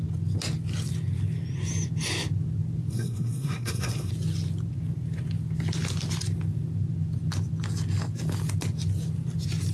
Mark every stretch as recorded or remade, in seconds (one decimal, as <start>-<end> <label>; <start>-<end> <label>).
0.0-2.9 recorded; 2.9-4.1 remade; 4.1-9.7 recorded